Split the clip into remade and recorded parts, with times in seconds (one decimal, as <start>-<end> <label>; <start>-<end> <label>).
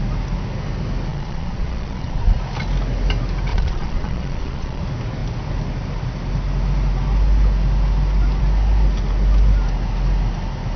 0.0-1.1 recorded; 1.1-2.4 remade; 2.4-3.5 recorded; 3.5-4.8 remade; 4.8-10.8 recorded